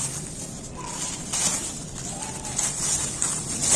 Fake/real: real